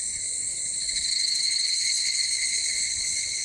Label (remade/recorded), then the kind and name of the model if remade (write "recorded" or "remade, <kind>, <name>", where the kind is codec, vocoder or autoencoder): remade, codec, HILCodec